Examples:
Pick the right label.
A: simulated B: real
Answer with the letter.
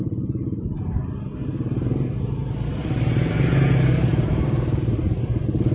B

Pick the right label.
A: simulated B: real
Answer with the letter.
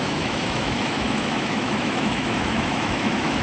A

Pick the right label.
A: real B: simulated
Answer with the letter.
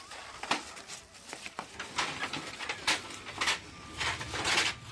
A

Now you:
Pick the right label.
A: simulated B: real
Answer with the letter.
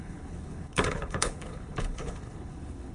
A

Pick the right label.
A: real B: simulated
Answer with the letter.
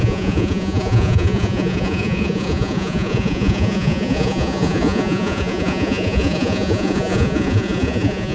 B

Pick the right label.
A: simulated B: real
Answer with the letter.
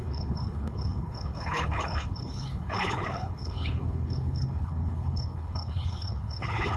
A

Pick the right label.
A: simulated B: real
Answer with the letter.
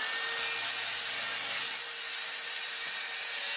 B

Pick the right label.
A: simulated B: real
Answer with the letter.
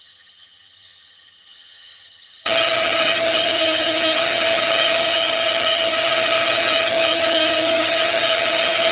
A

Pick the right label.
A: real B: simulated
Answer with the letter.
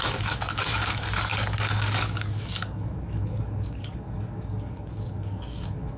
B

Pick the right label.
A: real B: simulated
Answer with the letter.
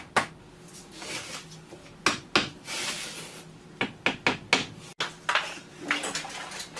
A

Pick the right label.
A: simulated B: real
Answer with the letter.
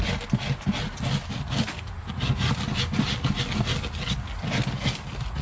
B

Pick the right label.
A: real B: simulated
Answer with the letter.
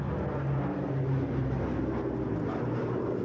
A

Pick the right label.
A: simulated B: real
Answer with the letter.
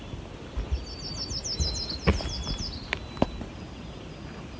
B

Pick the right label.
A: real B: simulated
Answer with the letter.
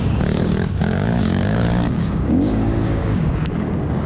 B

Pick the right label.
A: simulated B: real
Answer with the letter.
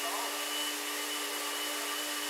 B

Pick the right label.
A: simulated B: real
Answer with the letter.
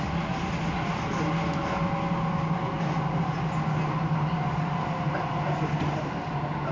B